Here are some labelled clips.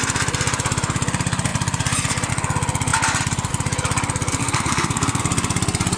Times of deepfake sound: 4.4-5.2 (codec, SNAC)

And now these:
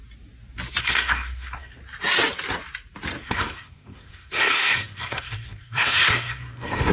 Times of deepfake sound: 0.8-1.8 (codec, SNAC); 3.2-6.9

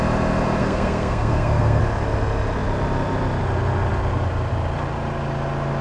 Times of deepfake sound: 0.6-1.8 (codec, SNAC)